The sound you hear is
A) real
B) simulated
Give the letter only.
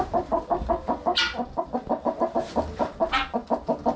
A